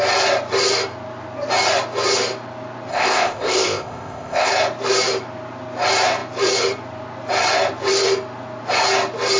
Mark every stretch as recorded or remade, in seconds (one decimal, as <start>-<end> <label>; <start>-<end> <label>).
0.0-2.9 recorded; 2.9-4.5 remade; 4.5-9.4 recorded